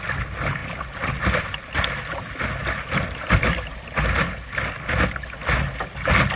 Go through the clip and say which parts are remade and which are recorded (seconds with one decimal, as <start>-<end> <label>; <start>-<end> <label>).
0.0-0.6 recorded; 0.6-1.6 remade; 1.6-6.4 recorded